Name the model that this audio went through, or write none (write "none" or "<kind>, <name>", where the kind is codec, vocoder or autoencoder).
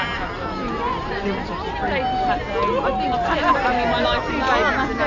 none